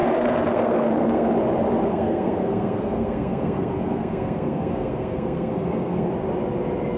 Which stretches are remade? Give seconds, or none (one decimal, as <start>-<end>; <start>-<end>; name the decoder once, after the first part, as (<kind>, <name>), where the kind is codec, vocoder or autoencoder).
0.0-1.3 (codec, SNAC); 1.9-6.1